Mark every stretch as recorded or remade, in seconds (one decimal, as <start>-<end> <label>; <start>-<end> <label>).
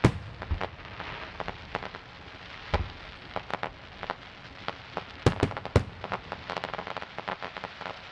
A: 0.0-8.1 recorded